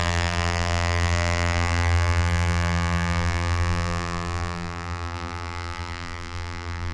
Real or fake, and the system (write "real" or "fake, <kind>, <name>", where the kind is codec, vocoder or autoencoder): fake, vocoder, BigVGAN v2